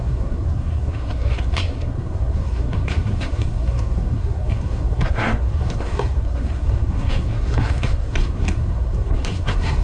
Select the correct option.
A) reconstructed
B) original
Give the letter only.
A